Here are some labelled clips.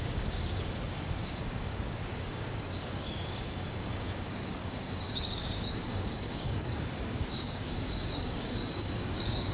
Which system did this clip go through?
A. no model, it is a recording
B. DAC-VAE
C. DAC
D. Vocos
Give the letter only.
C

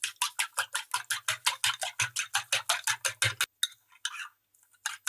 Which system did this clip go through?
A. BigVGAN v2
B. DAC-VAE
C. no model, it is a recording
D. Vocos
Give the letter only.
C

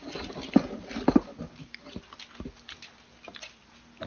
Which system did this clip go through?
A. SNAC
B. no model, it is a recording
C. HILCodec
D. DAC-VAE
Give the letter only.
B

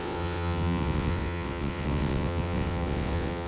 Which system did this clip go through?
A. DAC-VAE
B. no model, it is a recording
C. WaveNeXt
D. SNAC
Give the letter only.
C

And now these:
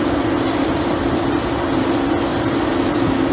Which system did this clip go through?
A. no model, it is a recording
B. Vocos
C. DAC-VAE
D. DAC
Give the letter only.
A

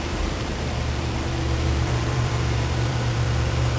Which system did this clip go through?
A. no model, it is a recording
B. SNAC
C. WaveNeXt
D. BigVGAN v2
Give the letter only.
D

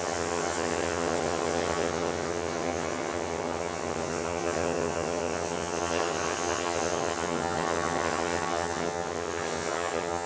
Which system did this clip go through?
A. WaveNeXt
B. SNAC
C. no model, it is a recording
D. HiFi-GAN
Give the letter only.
D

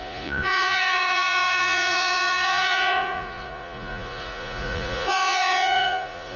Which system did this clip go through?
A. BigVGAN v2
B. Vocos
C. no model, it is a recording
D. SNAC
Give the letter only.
B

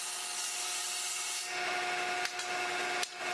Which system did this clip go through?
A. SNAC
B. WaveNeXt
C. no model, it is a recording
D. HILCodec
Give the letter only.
C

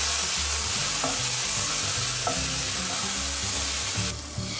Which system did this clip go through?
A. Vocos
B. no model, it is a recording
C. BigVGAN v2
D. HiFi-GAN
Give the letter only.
B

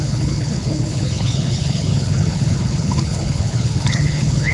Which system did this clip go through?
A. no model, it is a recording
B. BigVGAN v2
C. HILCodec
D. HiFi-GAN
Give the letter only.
C